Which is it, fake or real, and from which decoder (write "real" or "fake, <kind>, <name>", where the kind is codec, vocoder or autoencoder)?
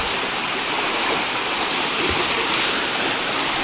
real